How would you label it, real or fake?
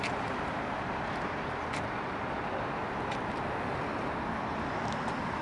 real